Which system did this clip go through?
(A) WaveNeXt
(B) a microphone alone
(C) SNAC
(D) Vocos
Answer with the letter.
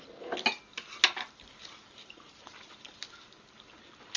B